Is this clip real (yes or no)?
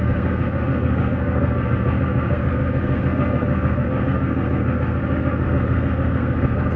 no